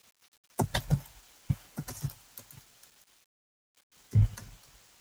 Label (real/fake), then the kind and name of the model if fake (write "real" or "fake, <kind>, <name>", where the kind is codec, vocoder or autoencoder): real